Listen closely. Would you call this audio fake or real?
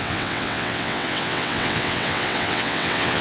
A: fake